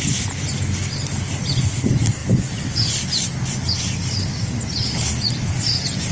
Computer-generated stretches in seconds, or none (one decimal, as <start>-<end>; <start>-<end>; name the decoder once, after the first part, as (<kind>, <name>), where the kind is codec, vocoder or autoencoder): none

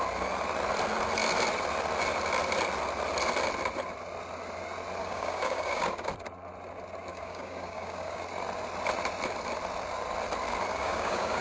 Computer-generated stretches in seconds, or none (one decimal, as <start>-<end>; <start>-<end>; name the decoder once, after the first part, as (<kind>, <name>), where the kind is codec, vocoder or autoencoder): 5.0-6.1 (codec, DAC); 7.1-8.2; 10.7-11.4

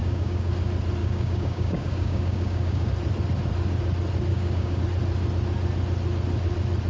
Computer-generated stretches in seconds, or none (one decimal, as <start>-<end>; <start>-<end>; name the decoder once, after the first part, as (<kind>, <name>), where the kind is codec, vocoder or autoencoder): 0.0-0.5 (codec, DAC); 1.0-2.9; 4.3-4.8

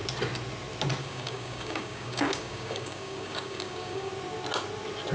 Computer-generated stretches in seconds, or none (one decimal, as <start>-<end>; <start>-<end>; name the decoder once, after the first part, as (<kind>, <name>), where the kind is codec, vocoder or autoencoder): 1.0-4.1 (codec, DAC)

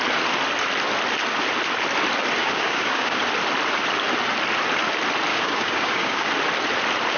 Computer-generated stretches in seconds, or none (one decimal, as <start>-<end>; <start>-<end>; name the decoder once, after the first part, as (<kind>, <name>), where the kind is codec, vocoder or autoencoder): 2.4-3.2 (codec, DAC); 5.3-6.3

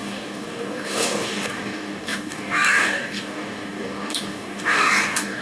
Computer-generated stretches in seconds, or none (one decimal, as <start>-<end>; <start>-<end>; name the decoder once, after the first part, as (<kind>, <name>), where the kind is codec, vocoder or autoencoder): 0.0-5.4 (codec, DAC)

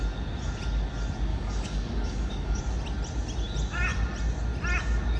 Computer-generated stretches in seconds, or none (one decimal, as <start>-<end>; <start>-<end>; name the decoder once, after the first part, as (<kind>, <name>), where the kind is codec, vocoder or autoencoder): 1.3-2.6 (codec, DAC)

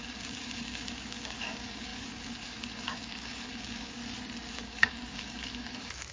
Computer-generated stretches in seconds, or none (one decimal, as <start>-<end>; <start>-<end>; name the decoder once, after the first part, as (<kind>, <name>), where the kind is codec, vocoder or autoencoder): 0.0-4.0 (codec, DAC); 4.5-6.1